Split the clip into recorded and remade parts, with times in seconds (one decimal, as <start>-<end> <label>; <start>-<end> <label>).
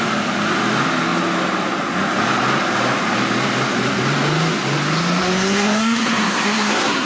0.0-5.2 recorded; 5.2-7.1 remade